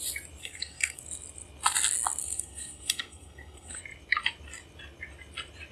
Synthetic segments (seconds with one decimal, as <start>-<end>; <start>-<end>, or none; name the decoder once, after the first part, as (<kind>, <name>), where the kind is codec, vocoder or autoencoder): 0.4-1.0 (codec, SNAC); 2.2-3.8